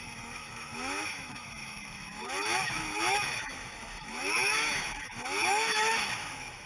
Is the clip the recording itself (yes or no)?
no